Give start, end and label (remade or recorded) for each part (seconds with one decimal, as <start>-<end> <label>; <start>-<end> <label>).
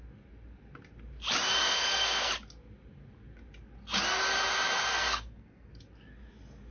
0.0-1.6 recorded; 1.6-2.3 remade; 2.3-4.9 recorded; 4.9-5.7 remade; 5.7-6.7 recorded